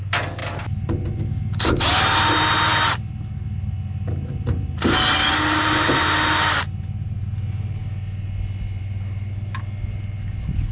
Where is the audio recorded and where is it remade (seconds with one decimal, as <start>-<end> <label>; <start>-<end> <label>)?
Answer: 0.0-10.7 recorded